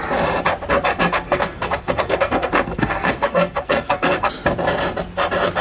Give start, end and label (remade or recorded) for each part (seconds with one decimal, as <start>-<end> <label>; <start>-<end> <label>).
0.0-0.9 recorded; 0.9-4.3 remade; 4.3-5.6 recorded